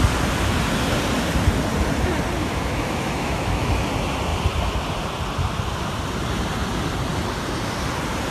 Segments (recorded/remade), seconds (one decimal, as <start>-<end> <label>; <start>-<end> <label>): 0.0-2.4 recorded; 2.4-3.7 remade; 3.7-8.3 recorded